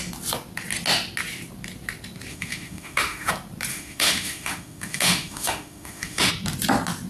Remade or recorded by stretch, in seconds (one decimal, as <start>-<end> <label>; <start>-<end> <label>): 0.0-2.3 recorded; 2.3-3.3 remade; 3.3-3.7 recorded; 3.7-6.3 remade; 6.3-7.1 recorded